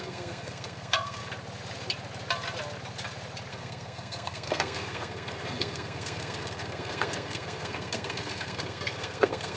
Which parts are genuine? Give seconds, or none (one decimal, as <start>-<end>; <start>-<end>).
1.2-3.5